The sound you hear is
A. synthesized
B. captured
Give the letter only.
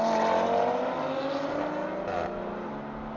B